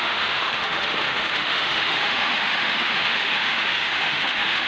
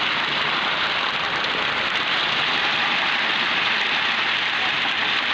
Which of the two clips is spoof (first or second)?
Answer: first